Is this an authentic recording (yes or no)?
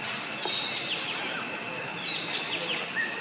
yes